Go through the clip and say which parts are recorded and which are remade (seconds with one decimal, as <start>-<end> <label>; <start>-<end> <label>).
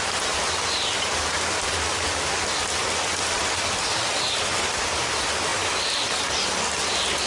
0.0-7.3 recorded